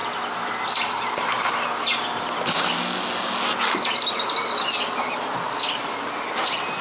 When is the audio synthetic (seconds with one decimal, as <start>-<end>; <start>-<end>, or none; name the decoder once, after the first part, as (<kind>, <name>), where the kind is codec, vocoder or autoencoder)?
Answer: none